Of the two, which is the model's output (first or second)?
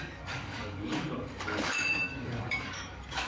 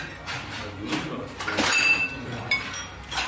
first